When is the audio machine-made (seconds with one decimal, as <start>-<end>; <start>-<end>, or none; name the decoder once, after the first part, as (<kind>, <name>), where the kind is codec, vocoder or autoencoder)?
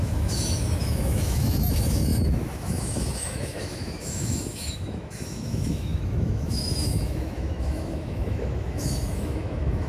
0.0-9.9 (autoencoder, DAC-VAE)